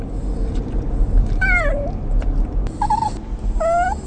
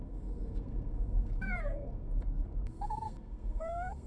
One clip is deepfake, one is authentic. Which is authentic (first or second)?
first